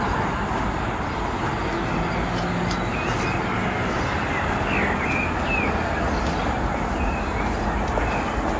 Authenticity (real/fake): real